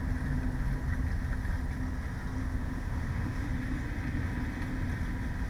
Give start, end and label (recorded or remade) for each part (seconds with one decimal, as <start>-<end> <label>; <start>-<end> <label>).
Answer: 0.0-2.4 recorded; 2.4-3.5 remade; 3.5-5.5 recorded